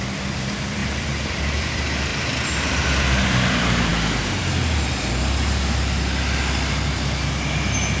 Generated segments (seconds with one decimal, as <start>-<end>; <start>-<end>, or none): 0.0-3.9